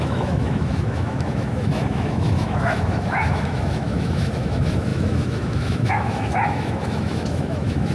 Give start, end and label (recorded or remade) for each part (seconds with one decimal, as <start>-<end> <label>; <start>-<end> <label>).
0.0-7.9 remade